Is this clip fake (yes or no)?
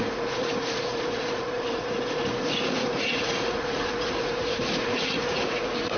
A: yes